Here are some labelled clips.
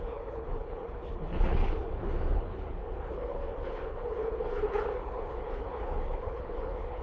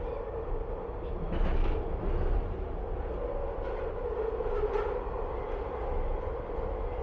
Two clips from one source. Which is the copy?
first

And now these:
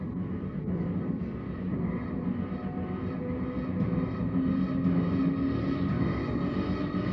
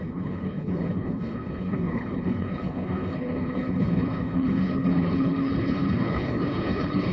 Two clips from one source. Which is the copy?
second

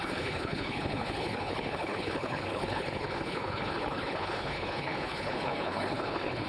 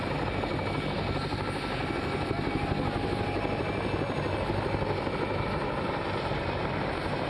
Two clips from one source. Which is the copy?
first